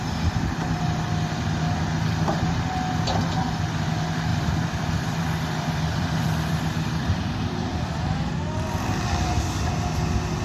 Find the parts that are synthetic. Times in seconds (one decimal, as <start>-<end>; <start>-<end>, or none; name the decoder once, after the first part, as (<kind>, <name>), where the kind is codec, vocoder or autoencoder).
4.3-8.0 (vocoder, BigVGAN v2)